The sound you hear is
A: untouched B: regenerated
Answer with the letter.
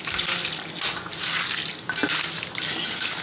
A